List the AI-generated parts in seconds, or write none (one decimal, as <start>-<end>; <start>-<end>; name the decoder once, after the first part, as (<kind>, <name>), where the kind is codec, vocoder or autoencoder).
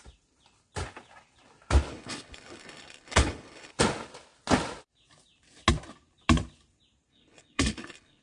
1.9-3.7 (codec, HILCodec); 7.1-8.2